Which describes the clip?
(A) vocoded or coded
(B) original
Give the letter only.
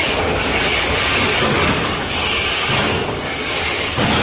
A